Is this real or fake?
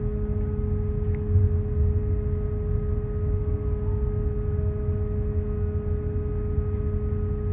real